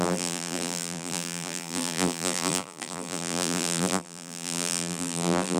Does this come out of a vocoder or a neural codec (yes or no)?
yes